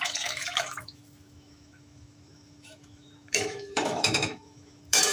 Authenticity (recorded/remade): remade